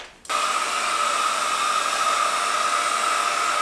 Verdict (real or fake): real